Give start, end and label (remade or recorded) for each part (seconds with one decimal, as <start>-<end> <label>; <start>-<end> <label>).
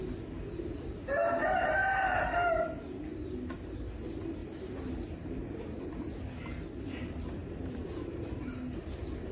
0.0-4.4 recorded; 4.4-5.9 remade; 5.9-7.4 recorded; 7.4-8.3 remade; 8.3-9.3 recorded